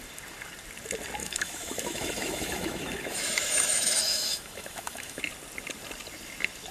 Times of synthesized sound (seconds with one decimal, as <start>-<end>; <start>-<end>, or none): 1.2-5.2